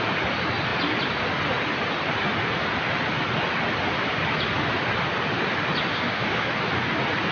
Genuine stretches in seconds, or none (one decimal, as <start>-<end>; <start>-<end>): 0.0-5.9; 6.5-7.3